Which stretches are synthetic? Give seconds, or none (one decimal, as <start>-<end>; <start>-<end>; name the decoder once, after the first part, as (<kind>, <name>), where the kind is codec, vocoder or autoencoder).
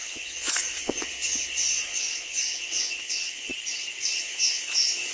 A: 0.0-3.5 (vocoder, Vocos); 4.2-5.1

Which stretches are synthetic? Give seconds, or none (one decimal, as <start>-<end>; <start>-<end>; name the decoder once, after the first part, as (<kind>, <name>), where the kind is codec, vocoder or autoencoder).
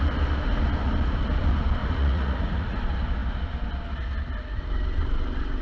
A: 1.8-2.8 (vocoder, Vocos)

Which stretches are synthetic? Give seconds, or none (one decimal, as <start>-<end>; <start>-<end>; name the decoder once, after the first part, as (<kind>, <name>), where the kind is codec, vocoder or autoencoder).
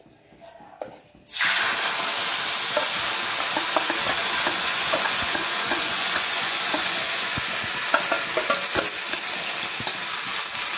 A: 4.2-7.5 (vocoder, Vocos)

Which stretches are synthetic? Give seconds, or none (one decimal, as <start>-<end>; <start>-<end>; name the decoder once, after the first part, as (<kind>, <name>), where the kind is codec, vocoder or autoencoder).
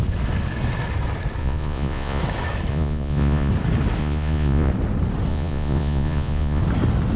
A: 1.4-2.2 (vocoder, Vocos); 2.7-3.5; 4.0-4.7; 5.3-6.6